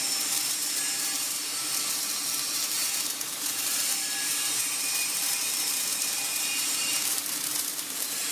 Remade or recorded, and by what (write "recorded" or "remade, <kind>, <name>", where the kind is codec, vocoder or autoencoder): remade, vocoder, BigVGAN v2